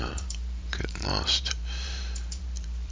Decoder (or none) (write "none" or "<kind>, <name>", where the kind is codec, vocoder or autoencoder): vocoder, BigVGAN v2